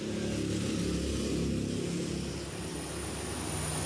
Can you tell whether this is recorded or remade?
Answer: recorded